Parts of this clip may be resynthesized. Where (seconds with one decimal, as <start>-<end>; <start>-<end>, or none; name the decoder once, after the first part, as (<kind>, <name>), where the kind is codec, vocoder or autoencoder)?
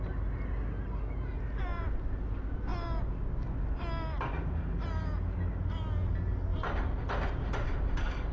none